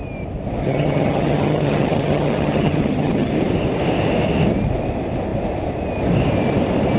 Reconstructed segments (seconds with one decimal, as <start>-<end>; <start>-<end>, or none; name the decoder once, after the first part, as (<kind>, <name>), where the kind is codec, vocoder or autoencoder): 0.6-3.3 (vocoder, HiFi-GAN)